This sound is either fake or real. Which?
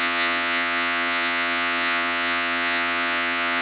fake